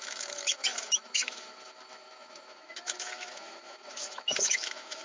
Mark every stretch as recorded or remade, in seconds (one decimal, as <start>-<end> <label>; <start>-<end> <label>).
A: 0.0-5.0 remade